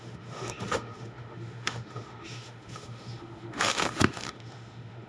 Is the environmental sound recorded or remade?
remade